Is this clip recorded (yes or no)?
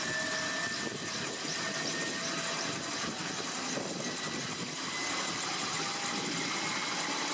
yes